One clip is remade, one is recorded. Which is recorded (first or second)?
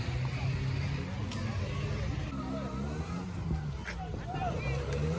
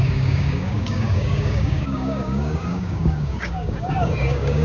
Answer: first